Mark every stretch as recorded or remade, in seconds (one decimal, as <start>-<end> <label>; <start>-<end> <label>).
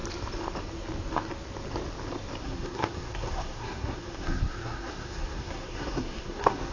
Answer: 0.0-2.4 recorded; 2.4-6.7 remade